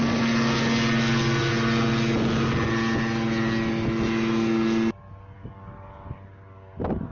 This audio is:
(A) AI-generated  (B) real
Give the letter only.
B